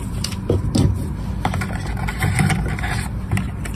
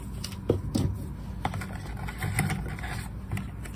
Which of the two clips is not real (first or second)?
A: first